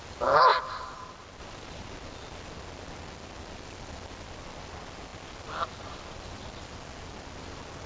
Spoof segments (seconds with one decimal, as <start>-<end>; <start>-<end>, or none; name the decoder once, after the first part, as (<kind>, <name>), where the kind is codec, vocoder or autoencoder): none